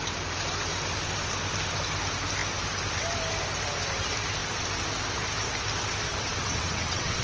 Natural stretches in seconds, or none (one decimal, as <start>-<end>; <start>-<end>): 0.0-6.1